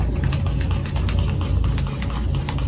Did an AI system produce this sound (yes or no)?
no